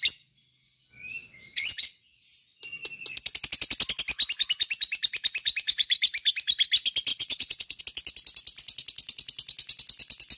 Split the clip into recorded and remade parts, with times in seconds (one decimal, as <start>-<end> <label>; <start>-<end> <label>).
0.0-1.2 recorded; 1.2-2.2 remade; 2.2-7.1 recorded; 7.1-7.8 remade; 7.8-10.4 recorded